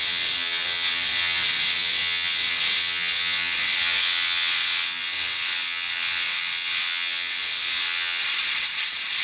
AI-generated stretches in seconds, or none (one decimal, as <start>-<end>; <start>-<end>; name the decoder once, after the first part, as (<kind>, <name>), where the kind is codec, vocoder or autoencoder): 0.0-8.2 (vocoder, WaveNeXt)